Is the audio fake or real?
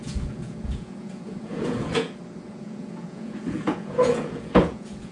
fake